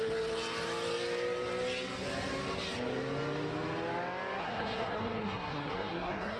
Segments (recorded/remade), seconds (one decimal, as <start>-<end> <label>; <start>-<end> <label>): 0.0-4.4 recorded; 4.4-6.4 remade